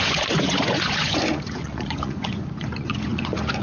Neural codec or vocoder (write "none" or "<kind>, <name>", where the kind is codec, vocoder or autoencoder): vocoder, Vocos